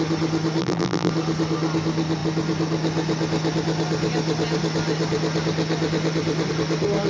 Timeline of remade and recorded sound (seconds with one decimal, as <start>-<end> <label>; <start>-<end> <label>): 0.0-0.6 recorded; 0.6-1.1 remade; 1.1-7.1 recorded